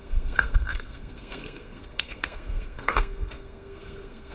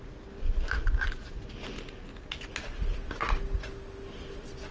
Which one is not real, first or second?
first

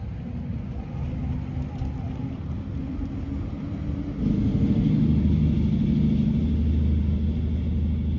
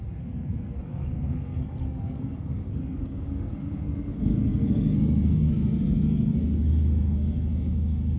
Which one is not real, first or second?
second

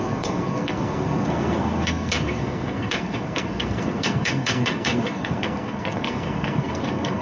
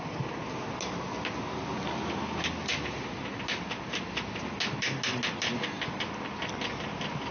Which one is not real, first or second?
first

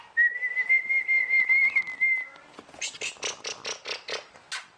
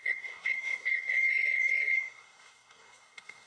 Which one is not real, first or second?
second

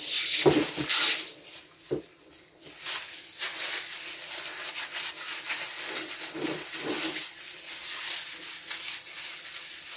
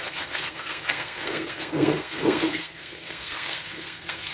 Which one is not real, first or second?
second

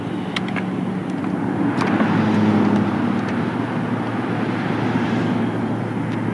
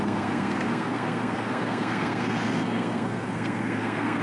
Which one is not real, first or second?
second